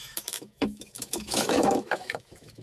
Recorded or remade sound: remade